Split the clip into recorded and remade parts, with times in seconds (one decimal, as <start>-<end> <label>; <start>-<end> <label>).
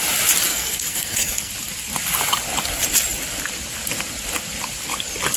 0.0-0.5 recorded; 0.5-1.5 remade; 1.5-5.4 recorded